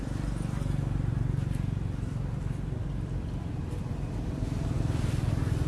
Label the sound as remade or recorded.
recorded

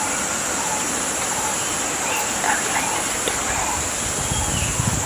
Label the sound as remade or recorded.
recorded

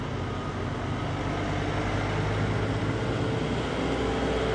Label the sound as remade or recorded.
recorded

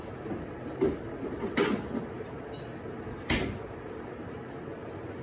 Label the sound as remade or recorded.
recorded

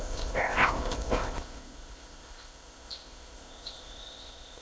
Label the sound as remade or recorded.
remade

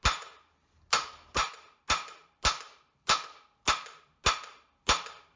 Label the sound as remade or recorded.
recorded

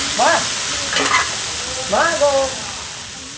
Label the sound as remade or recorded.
recorded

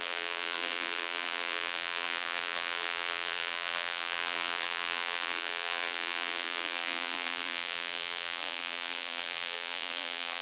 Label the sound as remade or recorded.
remade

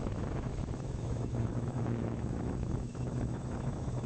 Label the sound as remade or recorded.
remade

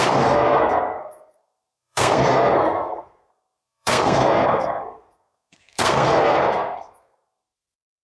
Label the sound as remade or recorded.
remade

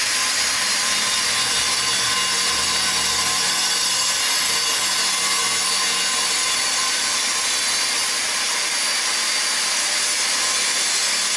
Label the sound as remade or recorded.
recorded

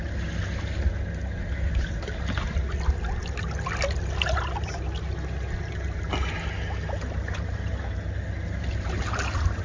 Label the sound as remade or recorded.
recorded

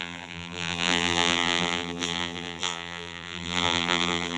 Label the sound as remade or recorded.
remade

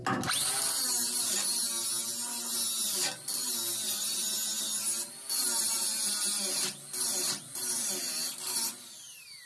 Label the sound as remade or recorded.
recorded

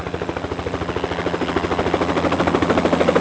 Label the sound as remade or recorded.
recorded